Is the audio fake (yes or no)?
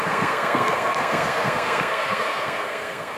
yes